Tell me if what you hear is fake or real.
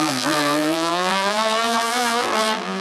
fake